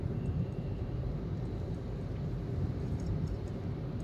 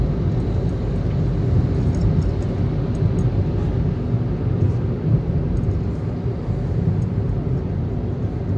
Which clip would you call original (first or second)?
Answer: second